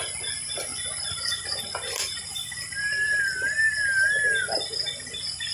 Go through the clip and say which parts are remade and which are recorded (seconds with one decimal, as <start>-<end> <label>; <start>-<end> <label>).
0.0-0.7 recorded; 0.7-1.6 remade; 1.6-2.3 recorded; 2.3-3.6 remade; 3.6-5.5 recorded